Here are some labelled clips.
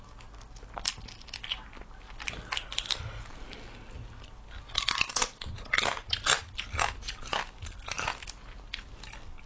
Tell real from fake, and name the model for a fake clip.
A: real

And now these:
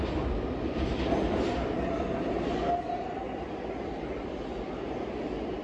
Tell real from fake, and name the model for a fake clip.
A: real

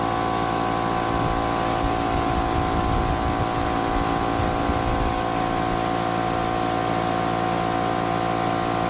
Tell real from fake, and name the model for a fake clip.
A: real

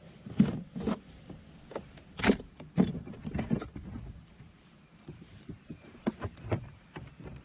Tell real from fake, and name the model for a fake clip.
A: fake, vocoder, BigVGAN v2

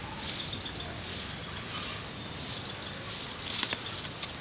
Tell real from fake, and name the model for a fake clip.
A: real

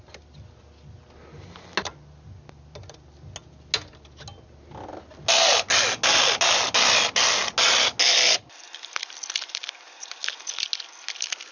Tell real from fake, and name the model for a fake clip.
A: real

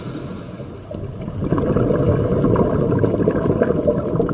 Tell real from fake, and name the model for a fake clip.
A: real